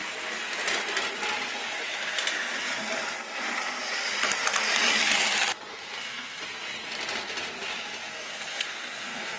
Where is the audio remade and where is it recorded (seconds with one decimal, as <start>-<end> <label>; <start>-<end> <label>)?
0.0-5.7 recorded; 5.7-6.4 remade; 6.4-8.1 recorded; 8.1-9.4 remade